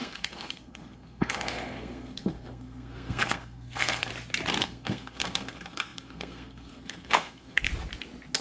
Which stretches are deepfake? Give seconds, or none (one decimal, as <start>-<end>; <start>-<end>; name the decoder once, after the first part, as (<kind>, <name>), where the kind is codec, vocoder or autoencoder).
0.0-4.1 (codec, SNAC); 4.6-7.7